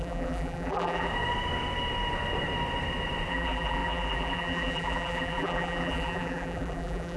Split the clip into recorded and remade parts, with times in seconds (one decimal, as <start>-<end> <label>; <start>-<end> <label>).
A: 0.0-1.1 remade; 1.1-3.3 recorded; 3.3-7.2 remade